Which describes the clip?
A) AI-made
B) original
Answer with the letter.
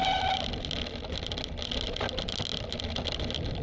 B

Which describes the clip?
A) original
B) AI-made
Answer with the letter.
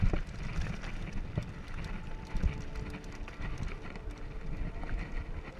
A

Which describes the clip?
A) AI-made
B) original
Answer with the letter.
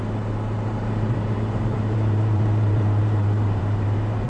A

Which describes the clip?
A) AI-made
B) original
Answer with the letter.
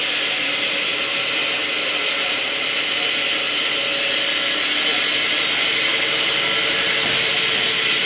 B